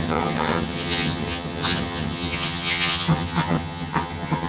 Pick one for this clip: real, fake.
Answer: fake